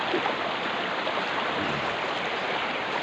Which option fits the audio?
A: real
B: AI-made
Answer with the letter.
A